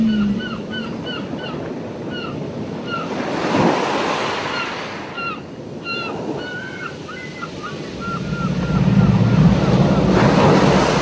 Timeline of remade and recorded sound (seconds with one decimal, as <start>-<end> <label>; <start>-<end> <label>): 0.0-11.0 recorded